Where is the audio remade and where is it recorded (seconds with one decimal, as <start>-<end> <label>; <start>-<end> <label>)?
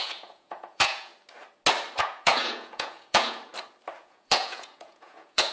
0.0-1.1 remade; 1.1-2.0 recorded; 2.0-3.5 remade; 3.5-4.0 recorded; 4.0-5.5 remade